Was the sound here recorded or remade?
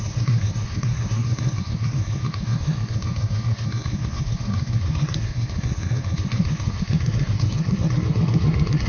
remade